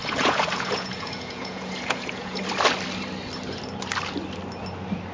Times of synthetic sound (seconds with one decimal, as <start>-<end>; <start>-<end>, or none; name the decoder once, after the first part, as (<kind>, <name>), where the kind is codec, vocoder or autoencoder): 0.0-2.4 (vocoder, Vocos)